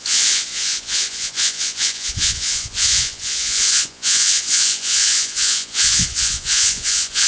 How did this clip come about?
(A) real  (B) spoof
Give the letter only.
B